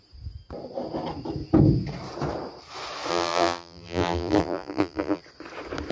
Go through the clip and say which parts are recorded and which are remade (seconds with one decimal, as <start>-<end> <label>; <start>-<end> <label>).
0.0-3.1 recorded; 3.1-5.2 remade; 5.2-5.9 recorded